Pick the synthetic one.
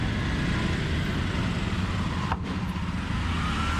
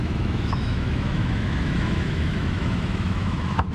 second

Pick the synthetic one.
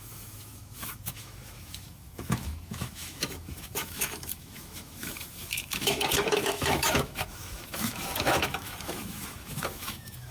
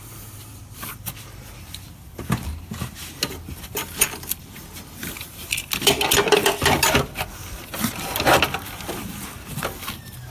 first